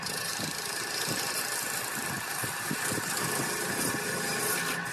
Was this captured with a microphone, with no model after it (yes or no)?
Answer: yes